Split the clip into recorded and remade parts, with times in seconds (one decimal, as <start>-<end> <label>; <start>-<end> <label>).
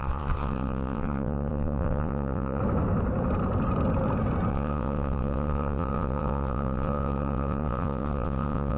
0.0-2.6 remade; 2.6-4.5 recorded; 4.5-8.8 remade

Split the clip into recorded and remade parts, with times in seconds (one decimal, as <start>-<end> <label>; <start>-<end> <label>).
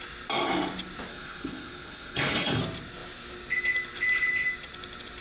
0.0-1.1 recorded; 1.1-2.6 remade; 2.6-5.2 recorded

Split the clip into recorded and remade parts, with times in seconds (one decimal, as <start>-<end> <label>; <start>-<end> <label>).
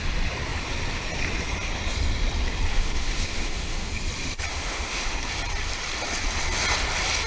0.0-2.7 recorded; 2.7-3.9 remade; 3.9-4.5 recorded; 4.5-5.3 remade; 5.3-7.3 recorded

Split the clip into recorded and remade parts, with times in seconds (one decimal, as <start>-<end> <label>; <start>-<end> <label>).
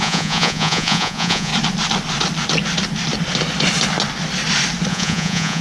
0.0-1.5 remade; 1.5-4.9 recorded; 4.9-5.6 remade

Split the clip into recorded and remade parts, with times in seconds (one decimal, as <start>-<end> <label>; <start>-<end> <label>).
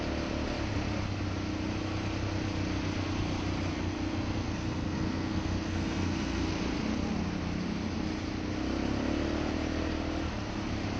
0.0-3.7 recorded; 3.7-6.5 remade; 6.5-11.0 recorded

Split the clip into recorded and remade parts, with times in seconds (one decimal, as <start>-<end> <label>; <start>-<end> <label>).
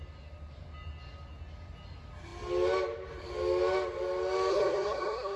0.0-4.5 recorded; 4.5-5.4 remade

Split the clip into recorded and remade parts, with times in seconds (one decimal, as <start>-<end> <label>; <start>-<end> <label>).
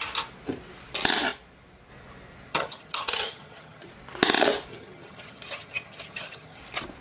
0.0-2.5 recorded; 2.5-3.9 remade; 3.9-4.7 recorded; 4.7-6.6 remade; 6.6-7.0 recorded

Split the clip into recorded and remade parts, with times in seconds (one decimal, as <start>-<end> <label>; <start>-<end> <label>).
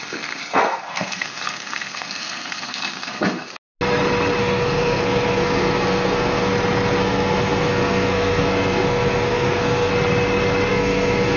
0.0-3.5 remade; 3.5-4.4 recorded; 4.4-6.5 remade; 6.5-7.0 recorded; 7.0-9.9 remade; 9.9-10.7 recorded; 10.7-11.4 remade